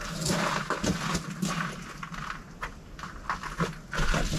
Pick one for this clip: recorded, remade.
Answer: recorded